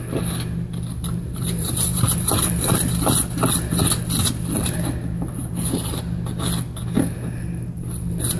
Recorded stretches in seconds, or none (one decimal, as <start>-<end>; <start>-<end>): 0.0-1.4; 2.5-5.4; 5.9-8.4

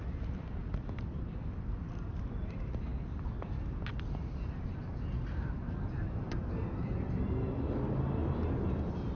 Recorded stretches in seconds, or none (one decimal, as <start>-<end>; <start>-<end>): 2.9-5.9; 8.2-9.1

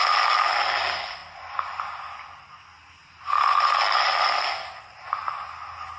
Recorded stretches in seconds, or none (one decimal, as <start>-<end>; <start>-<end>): 0.0-6.0